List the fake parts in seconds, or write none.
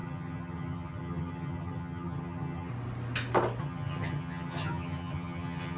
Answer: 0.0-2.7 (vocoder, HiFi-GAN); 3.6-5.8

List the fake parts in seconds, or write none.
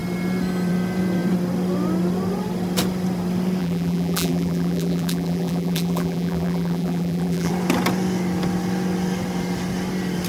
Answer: 3.6-7.5 (vocoder, BigVGAN v2)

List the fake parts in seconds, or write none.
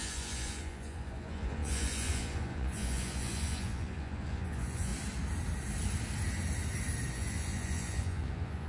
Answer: 0.0-4.9 (vocoder, Vocos); 7.1-8.7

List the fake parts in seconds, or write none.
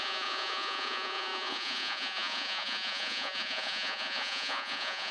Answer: 0.0-5.1 (vocoder, Vocos)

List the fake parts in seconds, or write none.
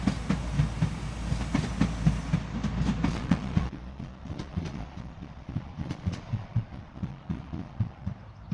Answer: 3.1-8.1 (vocoder, Vocos)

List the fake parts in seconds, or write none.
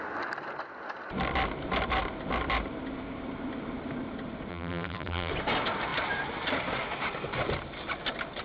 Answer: 4.5-5.3 (vocoder, BigVGAN v2)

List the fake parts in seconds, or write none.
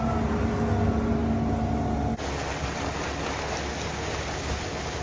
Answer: none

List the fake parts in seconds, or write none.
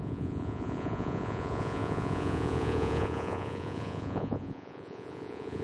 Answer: 0.0-5.6 (vocoder, Vocos)